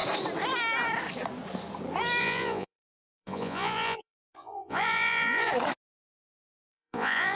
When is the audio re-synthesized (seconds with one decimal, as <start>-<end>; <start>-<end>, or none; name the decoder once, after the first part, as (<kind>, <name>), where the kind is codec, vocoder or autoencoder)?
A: 2.2-5.5 (vocoder, Vocos); 6.1-7.4